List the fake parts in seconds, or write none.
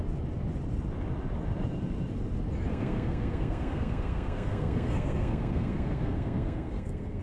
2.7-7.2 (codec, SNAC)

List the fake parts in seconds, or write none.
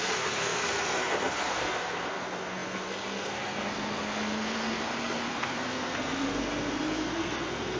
0.0-7.8 (codec, SNAC)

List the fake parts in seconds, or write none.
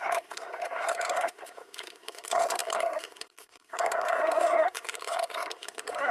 0.0-6.1 (codec, SNAC)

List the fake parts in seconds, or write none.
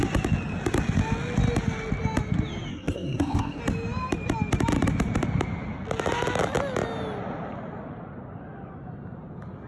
2.7-3.6 (codec, SNAC)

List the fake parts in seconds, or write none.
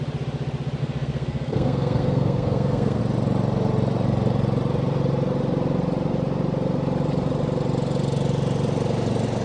0.8-3.0 (codec, SNAC)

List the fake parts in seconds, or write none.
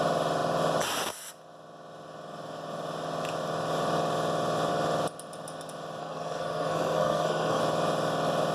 6.0-7.6 (codec, SNAC)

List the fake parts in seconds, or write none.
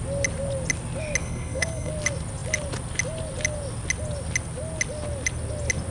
1.2-1.9 (codec, SNAC)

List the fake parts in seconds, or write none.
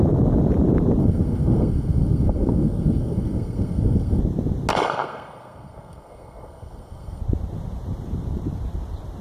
1.0-4.2 (codec, SNAC); 4.7-7.2